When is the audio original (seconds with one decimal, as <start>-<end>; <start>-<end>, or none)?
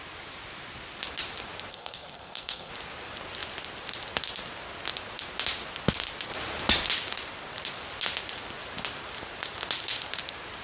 0.0-1.7; 2.7-10.6